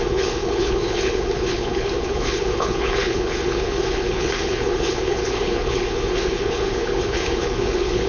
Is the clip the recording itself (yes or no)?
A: no